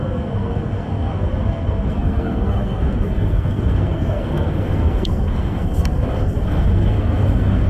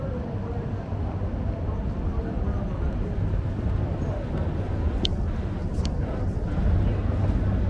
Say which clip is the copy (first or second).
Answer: first